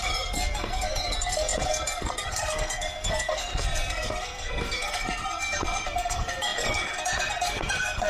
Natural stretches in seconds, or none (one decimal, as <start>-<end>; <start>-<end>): none